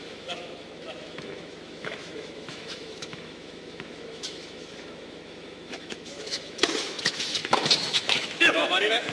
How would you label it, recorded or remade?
remade